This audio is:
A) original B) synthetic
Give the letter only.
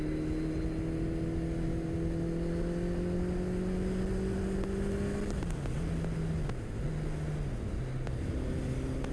A